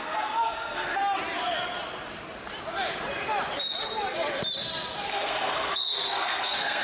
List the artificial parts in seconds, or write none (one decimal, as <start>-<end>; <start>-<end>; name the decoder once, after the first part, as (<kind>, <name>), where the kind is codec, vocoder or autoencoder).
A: 0.0-1.0 (codec, SNAC); 5.1-6.8